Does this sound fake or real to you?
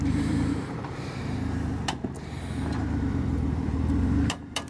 fake